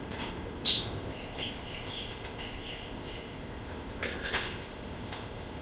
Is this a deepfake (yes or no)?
yes